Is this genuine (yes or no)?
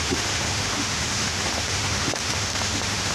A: no